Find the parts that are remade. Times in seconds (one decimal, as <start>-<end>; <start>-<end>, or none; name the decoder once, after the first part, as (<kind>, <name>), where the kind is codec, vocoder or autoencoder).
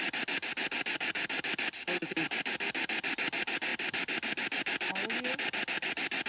none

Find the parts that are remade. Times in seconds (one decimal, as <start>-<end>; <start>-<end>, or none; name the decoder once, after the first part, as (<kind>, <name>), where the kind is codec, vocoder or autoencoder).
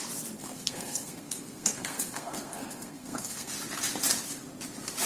0.4-3.5 (codec, SNAC)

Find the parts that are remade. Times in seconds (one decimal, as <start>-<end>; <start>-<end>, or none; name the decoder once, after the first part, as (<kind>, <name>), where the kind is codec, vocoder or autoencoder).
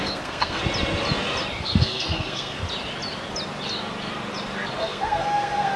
0.0-0.6 (codec, SNAC); 1.6-2.6; 4.8-5.8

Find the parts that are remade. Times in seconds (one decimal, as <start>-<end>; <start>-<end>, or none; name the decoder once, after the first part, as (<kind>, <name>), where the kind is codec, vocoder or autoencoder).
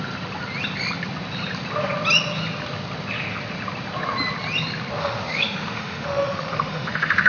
5.0-7.3 (autoencoder, DAC-VAE)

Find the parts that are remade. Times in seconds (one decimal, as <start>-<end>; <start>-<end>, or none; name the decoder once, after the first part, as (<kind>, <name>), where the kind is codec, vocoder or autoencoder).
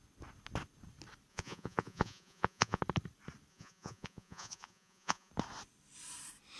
1.3-2.8 (vocoder, Vocos); 3.5-5.3